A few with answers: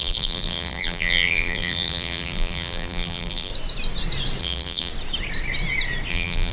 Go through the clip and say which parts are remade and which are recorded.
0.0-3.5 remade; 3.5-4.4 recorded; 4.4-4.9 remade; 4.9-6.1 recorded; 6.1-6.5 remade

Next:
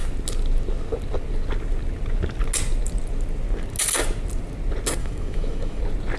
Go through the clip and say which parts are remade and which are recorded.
0.0-5.0 recorded; 5.0-5.8 remade; 5.8-6.2 recorded